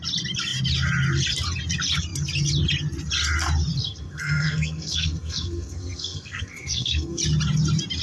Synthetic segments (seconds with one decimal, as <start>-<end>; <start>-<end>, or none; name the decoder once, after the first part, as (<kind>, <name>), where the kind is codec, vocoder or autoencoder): 3.8-7.2 (codec, SNAC)